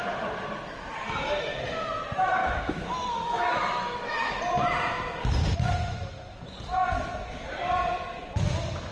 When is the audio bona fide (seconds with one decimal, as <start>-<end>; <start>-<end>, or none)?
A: 0.0-2.4; 4.4-8.9